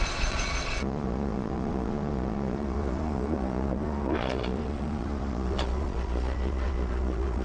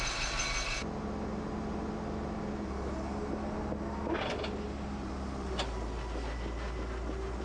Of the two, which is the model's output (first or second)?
first